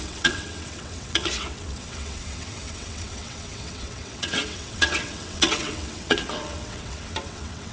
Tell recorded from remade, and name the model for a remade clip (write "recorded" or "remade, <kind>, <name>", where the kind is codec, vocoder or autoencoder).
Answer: remade, vocoder, WaveNeXt